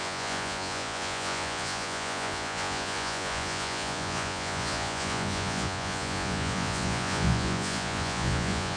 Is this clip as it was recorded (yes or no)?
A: no